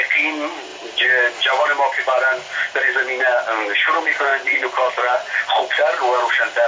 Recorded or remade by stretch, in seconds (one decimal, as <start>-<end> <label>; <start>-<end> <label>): 0.0-6.7 recorded